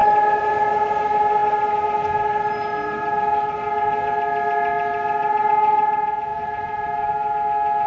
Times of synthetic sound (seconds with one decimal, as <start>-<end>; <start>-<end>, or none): 6.3-7.1